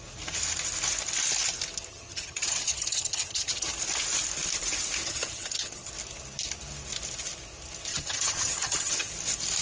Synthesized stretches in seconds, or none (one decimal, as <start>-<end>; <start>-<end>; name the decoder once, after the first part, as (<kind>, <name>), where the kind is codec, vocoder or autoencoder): 1.9-3.7 (vocoder, HiFi-GAN); 5.0-5.9; 7.9-9.1